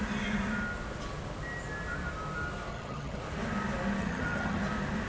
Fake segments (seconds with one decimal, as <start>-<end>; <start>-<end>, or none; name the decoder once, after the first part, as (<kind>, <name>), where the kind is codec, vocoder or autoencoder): 2.7-3.2 (vocoder, HiFi-GAN); 4.0-4.6